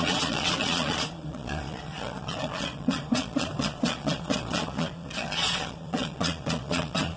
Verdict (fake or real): fake